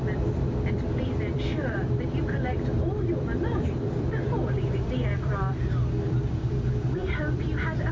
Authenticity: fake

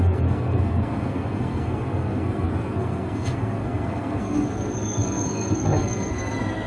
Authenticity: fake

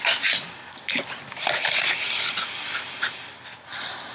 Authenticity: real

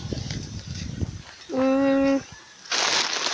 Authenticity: real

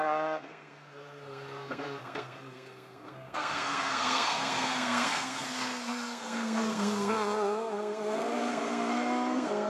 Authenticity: fake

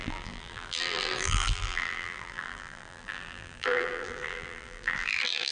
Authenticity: fake